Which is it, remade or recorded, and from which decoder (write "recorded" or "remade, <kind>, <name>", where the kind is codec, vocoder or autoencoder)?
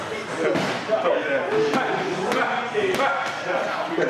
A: recorded